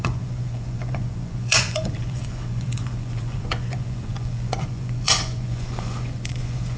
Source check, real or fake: fake